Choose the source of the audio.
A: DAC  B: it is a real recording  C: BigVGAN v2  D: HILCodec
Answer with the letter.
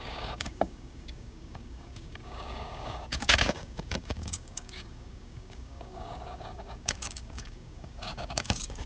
A